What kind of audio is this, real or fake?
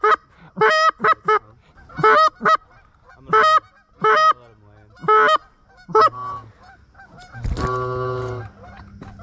real